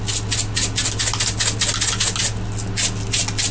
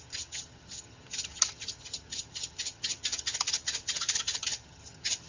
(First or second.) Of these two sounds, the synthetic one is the second